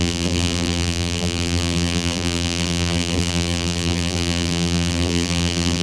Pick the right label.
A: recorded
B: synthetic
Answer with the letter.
B